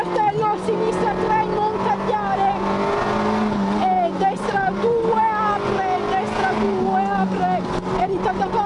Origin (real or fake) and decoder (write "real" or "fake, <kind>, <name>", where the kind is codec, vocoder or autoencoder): real